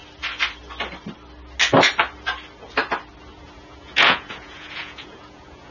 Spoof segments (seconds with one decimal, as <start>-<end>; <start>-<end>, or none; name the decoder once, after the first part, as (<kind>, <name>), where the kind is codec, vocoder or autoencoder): 3.4-5.7 (vocoder, Vocos)